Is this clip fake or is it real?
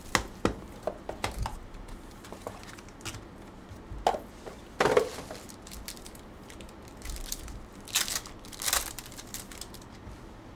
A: real